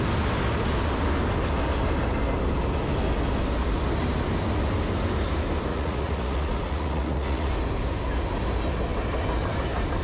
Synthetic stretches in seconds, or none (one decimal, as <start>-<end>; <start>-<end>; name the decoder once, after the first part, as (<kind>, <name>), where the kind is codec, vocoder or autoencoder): 5.7-7.5 (vocoder, Vocos)

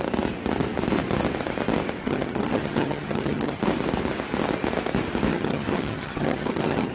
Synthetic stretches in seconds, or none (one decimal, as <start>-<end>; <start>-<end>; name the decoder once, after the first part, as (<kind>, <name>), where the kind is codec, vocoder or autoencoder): 2.0-3.6 (vocoder, HiFi-GAN); 5.3-6.9

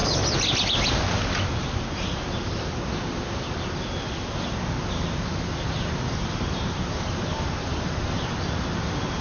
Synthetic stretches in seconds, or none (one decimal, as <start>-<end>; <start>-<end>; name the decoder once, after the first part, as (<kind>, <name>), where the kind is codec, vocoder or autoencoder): 4.9-9.2 (vocoder, BigVGAN v2)

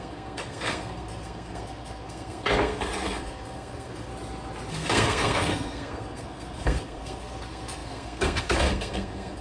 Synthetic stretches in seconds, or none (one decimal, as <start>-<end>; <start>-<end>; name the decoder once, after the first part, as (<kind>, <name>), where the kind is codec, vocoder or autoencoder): 0.0-4.1 (codec, SNAC); 4.7-9.4

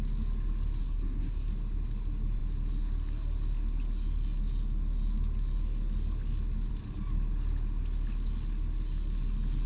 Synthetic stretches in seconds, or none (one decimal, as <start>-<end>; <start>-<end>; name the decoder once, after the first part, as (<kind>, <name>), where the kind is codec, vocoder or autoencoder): 0.8-1.5 (codec, SNAC)

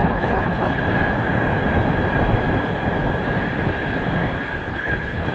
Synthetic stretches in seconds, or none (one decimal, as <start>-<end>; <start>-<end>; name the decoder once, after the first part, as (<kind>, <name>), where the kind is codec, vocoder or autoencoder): 0.0-0.8 (codec, HILCodec); 4.7-5.3

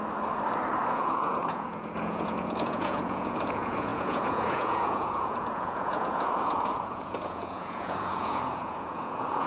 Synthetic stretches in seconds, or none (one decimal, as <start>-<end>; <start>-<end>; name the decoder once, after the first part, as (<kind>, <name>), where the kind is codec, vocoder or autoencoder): 0.9-9.5 (vocoder, Vocos)

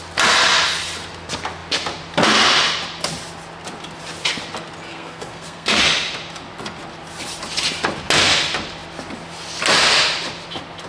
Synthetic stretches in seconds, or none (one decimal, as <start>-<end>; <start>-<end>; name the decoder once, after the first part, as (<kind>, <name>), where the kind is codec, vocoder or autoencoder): 4.9-5.8 (codec, SNAC)